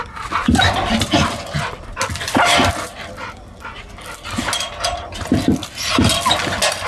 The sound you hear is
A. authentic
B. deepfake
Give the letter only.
A